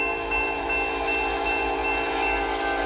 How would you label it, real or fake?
real